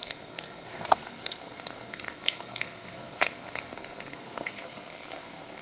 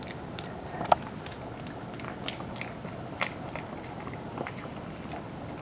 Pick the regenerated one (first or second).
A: first